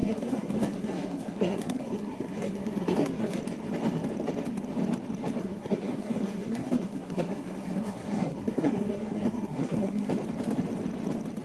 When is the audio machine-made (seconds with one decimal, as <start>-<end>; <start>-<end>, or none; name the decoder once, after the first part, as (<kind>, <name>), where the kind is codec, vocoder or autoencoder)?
0.0-3.4 (codec, SNAC); 5.4-10.1